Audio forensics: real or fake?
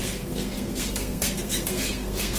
fake